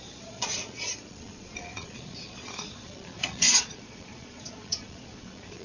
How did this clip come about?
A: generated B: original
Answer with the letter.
A